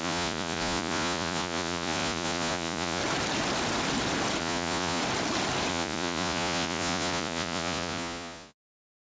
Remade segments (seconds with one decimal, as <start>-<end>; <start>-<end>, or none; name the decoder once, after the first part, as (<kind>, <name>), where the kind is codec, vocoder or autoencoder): 0.0-3.0 (vocoder, Vocos); 4.4-5.0; 5.7-9.1